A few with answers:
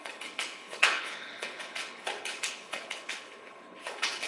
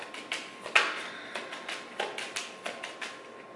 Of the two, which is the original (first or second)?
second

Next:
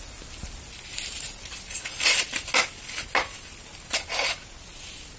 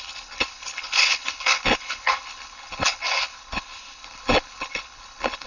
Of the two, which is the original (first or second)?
first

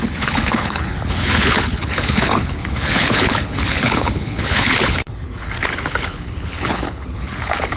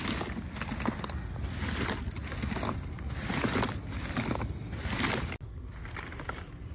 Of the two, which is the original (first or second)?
second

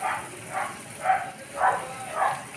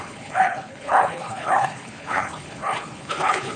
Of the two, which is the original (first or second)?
first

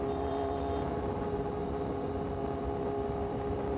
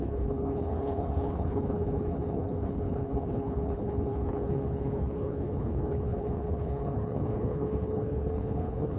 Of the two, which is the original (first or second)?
first